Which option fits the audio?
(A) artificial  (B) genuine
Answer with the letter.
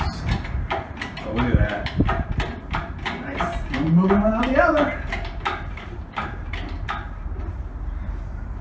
A